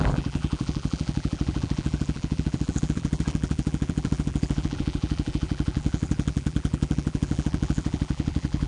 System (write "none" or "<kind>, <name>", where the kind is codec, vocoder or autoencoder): vocoder, BigVGAN v2